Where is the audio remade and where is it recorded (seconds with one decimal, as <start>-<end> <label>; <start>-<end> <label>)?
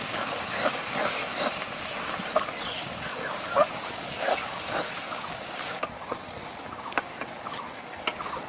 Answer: 0.0-1.2 remade; 1.2-2.6 recorded; 2.6-8.5 remade